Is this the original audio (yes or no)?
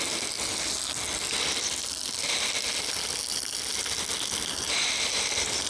yes